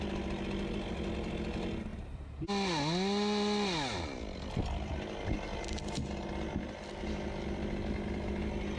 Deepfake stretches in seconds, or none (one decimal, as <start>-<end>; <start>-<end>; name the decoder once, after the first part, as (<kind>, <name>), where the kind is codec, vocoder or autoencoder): none